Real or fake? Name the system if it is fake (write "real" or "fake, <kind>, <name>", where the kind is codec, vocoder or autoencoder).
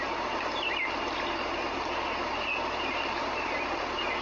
real